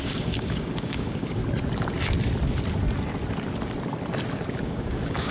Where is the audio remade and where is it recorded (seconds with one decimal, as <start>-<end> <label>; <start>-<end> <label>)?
0.0-1.4 remade; 1.4-4.5 recorded; 4.5-5.3 remade